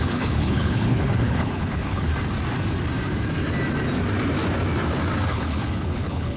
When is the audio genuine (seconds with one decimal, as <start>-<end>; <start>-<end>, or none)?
2.1-5.3